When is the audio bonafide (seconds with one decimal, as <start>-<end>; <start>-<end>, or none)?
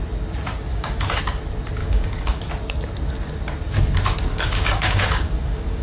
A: 0.0-0.7; 1.2-1.8; 2.4-4.3